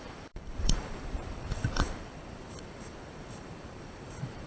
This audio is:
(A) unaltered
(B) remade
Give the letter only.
B